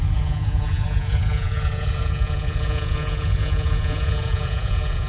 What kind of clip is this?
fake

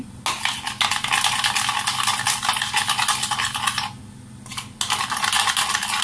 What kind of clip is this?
real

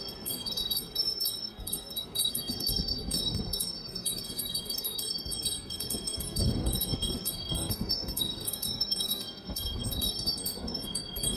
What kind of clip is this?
fake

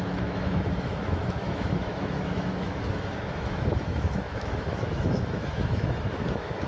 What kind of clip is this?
fake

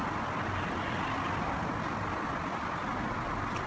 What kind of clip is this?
real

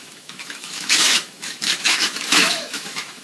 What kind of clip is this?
fake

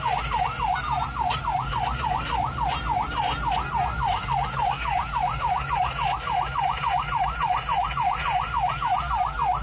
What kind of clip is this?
real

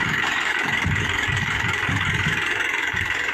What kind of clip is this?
fake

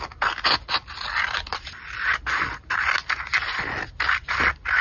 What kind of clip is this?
real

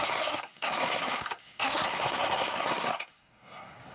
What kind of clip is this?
fake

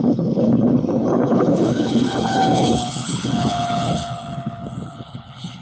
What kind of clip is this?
fake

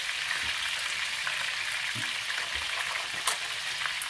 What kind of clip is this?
real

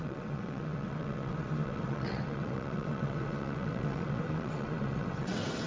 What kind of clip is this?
fake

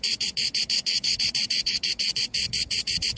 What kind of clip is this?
fake